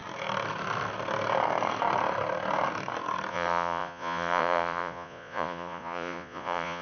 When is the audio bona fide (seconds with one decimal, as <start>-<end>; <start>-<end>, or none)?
0.0-3.3